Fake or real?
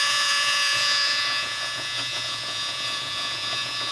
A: fake